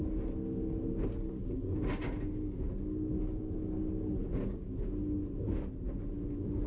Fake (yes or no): no